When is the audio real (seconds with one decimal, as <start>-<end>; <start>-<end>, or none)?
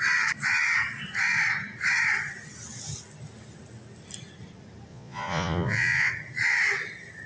0.0-4.9; 6.1-7.3